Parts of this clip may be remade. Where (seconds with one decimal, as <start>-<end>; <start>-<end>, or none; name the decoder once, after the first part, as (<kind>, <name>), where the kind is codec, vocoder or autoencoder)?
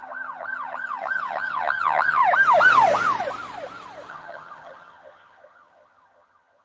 0.0-2.2 (vocoder, HiFi-GAN); 4.1-6.6